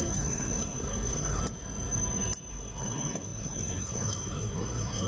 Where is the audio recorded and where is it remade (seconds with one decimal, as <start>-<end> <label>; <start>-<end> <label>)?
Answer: 0.0-1.4 remade; 1.4-2.5 recorded; 2.5-5.1 remade